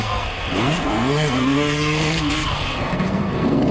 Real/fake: fake